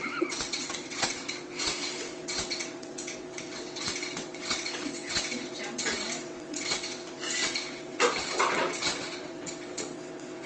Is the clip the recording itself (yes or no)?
no